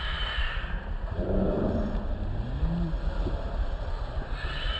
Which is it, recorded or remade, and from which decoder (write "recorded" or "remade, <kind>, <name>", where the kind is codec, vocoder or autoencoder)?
recorded